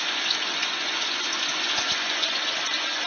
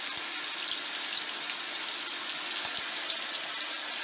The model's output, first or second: first